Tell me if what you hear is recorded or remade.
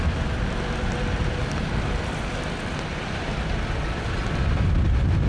recorded